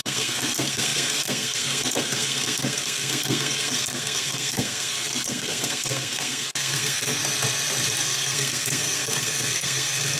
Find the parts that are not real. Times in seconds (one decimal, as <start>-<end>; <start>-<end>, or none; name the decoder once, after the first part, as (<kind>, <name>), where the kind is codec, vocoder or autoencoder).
0.0-7.2 (codec, SNAC); 8.0-10.2

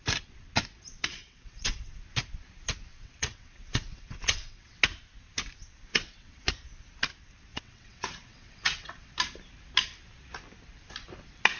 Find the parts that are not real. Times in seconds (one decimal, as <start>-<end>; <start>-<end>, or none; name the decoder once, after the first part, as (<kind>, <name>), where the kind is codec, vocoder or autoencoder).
1.1-1.8 (vocoder, WaveNeXt); 2.9-4.8; 5.9-6.5; 7.5-9.1

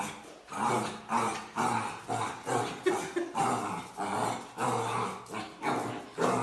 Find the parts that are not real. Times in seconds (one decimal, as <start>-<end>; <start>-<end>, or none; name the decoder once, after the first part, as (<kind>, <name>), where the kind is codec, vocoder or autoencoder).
none

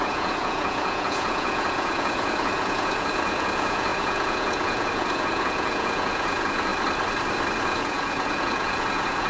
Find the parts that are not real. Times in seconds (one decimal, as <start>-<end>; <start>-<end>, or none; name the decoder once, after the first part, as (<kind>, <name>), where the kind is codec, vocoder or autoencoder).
0.0-6.7 (vocoder, Vocos); 7.6-9.3

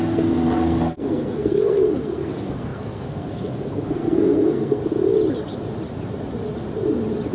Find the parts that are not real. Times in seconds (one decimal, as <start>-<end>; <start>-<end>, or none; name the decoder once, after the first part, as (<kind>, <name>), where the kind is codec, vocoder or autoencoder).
0.0-4.8 (codec, SNAC)

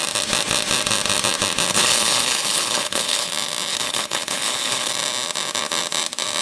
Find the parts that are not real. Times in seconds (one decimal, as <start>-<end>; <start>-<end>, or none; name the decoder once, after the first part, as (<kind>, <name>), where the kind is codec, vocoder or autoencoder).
1.7-3.3 (codec, HILCodec); 3.7-4.9

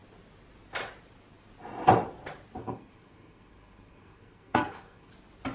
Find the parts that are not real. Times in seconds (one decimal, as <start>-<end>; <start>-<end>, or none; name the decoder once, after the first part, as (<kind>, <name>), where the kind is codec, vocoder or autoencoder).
2.6-5.1 (codec, SNAC)

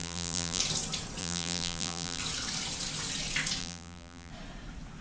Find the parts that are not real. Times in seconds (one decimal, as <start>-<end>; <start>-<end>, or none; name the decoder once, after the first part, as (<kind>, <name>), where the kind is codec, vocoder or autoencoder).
0.0-0.6 (vocoder, BigVGAN v2); 1.2-2.2; 3.6-4.3